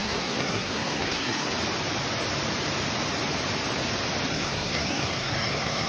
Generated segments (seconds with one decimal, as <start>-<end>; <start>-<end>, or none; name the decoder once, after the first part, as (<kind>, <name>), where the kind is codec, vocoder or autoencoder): 0.0-1.5 (codec, SNAC); 4.3-5.9

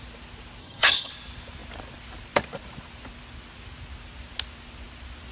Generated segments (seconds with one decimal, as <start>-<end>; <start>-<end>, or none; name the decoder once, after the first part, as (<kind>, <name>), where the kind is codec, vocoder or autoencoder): 0.6-1.1 (vocoder, HiFi-GAN)

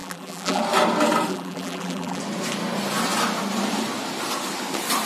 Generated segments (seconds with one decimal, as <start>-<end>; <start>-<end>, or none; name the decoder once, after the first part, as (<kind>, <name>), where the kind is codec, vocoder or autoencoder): 0.0-0.6 (vocoder, BigVGAN v2); 1.3-2.2

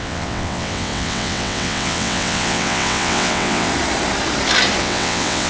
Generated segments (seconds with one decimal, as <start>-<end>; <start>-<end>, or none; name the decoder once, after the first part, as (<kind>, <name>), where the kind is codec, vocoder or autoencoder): 0.0-3.7 (vocoder, WaveNeXt); 4.8-5.5

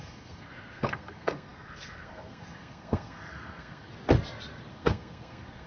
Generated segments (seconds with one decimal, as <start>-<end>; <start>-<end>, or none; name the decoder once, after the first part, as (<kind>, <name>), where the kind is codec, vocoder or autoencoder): 0.0-3.9 (codec, SNAC); 4.7-5.7

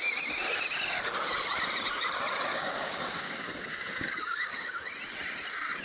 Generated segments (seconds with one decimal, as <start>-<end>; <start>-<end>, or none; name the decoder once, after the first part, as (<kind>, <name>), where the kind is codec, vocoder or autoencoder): 2.5-4.9 (codec, DAC)

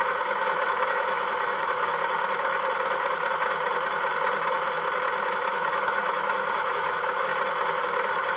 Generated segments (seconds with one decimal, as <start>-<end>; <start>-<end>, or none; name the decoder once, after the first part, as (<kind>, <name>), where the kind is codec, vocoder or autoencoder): 0.0-1.9 (autoencoder, DAC-VAE); 5.3-7.3; 7.8-8.4

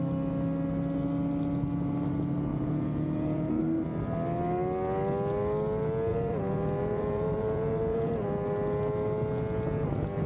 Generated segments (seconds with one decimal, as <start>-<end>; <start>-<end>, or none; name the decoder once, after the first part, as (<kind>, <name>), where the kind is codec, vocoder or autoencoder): 2.5-3.6 (vocoder, Vocos); 6.1-8.1